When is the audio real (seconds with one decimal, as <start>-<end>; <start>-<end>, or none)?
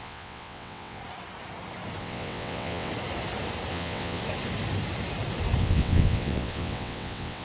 1.0-2.0; 2.9-3.7; 4.2-5.6